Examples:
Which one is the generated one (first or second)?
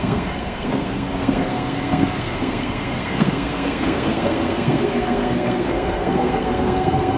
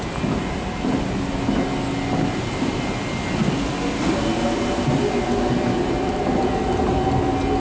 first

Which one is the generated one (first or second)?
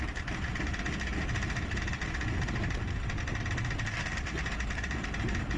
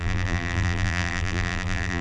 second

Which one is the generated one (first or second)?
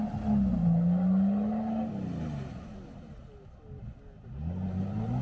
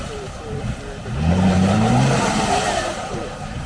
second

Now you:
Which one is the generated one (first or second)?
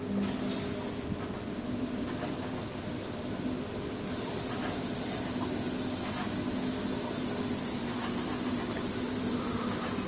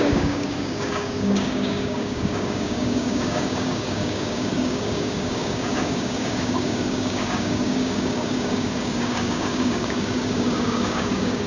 second